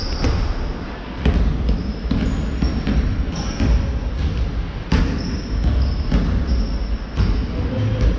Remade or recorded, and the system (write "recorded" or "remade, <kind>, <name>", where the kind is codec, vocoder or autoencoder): recorded